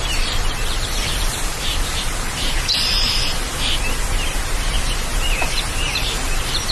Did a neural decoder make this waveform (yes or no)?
yes